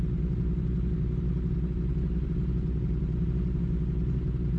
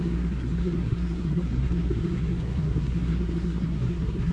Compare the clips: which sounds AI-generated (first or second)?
second